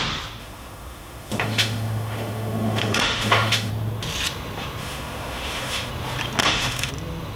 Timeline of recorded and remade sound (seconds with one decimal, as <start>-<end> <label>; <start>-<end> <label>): 0.0-0.4 recorded; 0.4-3.7 remade; 3.7-4.8 recorded; 4.8-5.9 remade; 5.9-6.4 recorded; 6.4-6.9 remade; 6.9-7.4 recorded